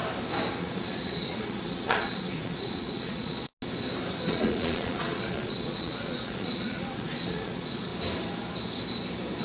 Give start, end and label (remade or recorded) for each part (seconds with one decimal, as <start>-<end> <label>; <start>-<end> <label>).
0.0-0.6 recorded; 0.6-3.5 remade; 3.5-4.3 recorded; 4.3-7.9 remade; 7.9-9.4 recorded